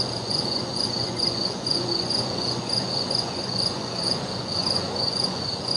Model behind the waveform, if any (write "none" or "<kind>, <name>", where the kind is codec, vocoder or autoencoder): vocoder, Vocos